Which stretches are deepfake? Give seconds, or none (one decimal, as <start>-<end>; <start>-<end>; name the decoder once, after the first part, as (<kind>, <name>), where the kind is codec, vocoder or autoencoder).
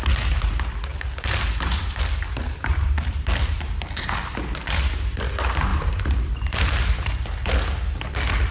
0.9-4.1 (vocoder, BigVGAN v2); 5.7-6.7